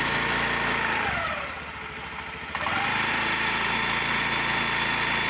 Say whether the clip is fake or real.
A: real